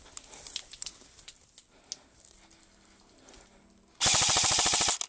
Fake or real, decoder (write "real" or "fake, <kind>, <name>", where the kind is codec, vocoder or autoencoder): real